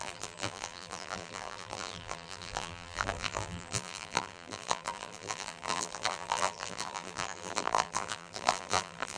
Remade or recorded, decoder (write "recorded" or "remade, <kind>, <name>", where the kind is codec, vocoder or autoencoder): remade, vocoder, BigVGAN v2